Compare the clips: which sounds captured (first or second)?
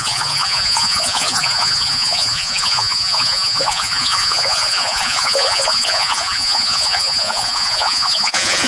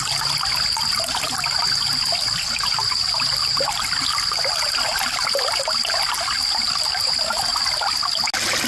second